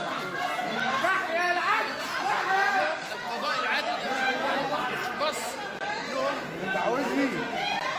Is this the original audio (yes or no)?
yes